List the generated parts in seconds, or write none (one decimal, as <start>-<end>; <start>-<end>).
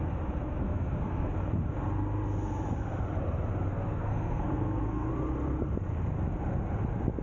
0.6-1.3; 3.7-5.1